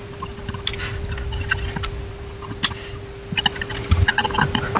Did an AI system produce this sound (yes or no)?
no